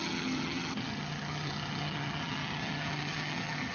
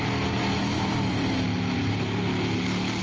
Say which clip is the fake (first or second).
first